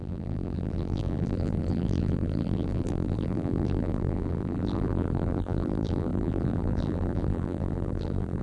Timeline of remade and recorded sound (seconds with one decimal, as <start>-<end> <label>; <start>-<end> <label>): 0.0-8.4 remade